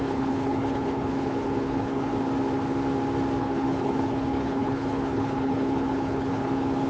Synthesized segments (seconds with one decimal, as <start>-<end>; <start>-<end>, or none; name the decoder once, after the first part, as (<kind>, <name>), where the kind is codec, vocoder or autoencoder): 0.0-2.1 (codec, HILCodec); 3.4-6.9